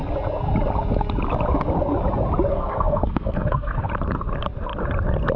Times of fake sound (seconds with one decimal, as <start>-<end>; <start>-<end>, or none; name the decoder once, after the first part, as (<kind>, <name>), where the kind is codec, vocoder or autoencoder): 2.5-3.9 (codec, SNAC)